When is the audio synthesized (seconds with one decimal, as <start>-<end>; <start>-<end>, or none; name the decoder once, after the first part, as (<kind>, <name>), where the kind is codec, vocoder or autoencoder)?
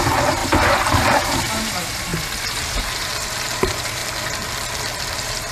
0.0-2.1 (vocoder, BigVGAN v2); 2.8-4.0; 5.0-5.5